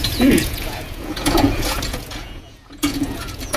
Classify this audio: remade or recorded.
remade